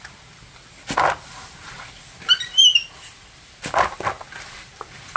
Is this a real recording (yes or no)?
yes